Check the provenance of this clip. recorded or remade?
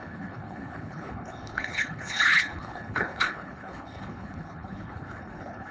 remade